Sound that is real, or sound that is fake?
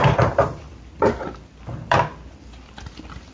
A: fake